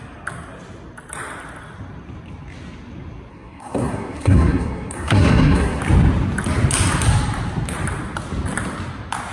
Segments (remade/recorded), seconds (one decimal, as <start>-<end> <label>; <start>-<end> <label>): 0.0-3.3 recorded; 3.3-5.8 remade; 5.8-9.3 recorded